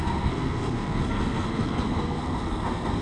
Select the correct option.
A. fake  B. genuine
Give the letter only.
A